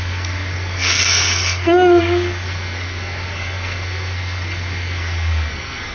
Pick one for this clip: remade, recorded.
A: remade